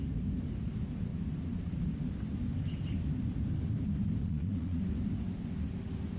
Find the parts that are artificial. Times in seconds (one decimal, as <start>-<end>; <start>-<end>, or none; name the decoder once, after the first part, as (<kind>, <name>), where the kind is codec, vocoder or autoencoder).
4.2-4.8 (vocoder, Vocos)